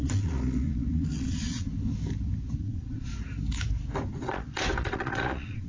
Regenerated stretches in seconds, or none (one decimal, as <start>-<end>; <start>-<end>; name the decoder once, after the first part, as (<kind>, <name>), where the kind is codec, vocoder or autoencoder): 0.0-1.7 (vocoder, Vocos); 2.6-3.1; 4.2-5.7